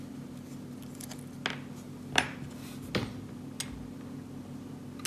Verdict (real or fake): real